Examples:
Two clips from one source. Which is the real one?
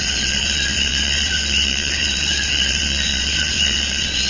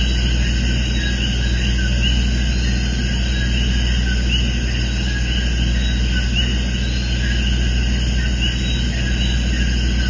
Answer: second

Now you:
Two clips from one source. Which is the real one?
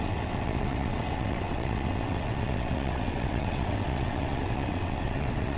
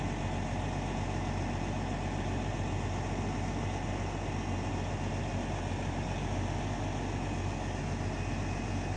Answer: second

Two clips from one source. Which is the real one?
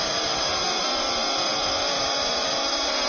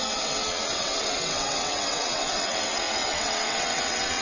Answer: first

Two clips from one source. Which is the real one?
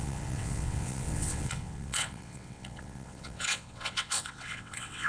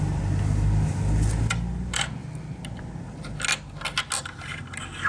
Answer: second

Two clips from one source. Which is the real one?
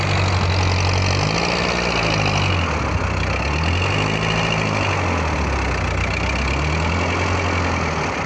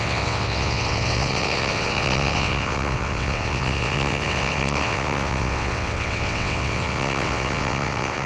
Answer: first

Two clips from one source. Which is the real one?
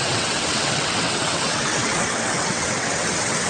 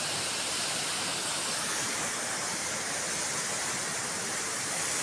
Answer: second